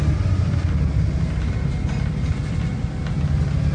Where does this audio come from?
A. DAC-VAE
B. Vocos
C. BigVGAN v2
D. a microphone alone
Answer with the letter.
D